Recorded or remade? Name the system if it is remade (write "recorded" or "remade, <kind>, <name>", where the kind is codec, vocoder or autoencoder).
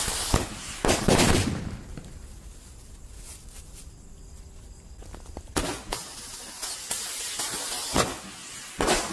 recorded